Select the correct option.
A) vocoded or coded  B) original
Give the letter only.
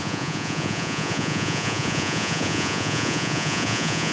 A